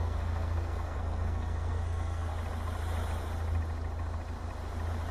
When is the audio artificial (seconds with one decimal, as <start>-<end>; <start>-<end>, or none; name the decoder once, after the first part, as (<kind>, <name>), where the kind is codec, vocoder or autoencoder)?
0.0-2.3 (codec, SNAC)